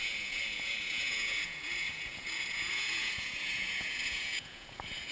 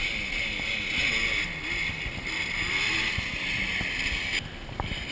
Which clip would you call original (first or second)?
second